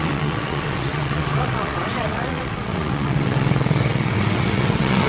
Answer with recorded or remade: remade